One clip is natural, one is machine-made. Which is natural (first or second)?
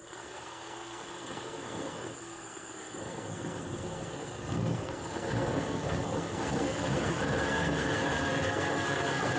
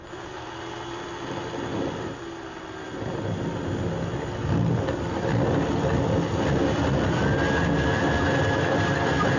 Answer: second